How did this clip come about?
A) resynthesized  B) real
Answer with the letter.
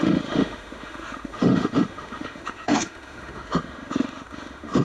A